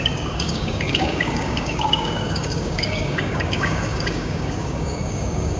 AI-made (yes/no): yes